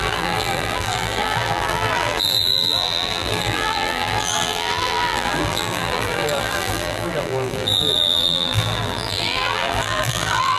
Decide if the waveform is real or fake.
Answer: fake